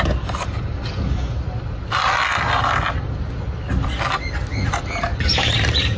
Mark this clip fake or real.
real